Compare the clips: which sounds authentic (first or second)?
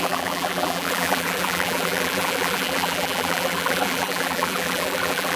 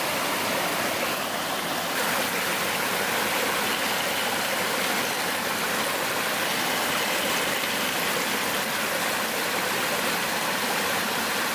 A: second